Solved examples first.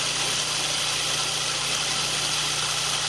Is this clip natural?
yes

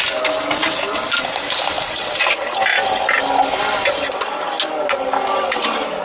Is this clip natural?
yes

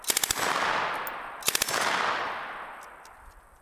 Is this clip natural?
yes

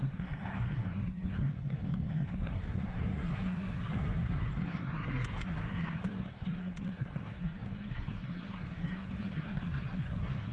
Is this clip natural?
no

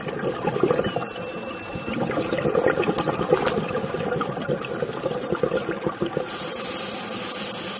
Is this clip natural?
yes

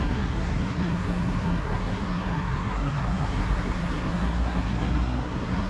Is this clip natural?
no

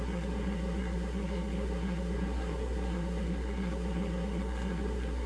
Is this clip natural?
no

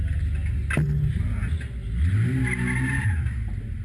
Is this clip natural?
yes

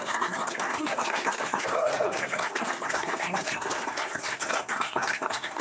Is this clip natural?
no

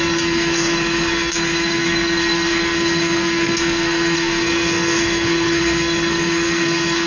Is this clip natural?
no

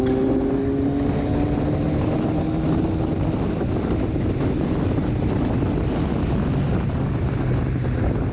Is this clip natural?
yes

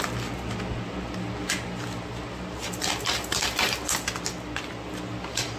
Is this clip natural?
yes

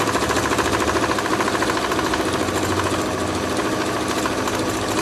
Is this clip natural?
yes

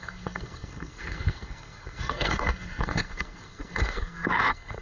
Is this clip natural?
no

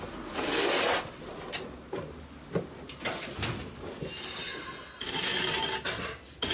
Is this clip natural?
yes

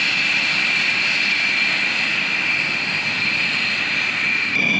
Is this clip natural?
yes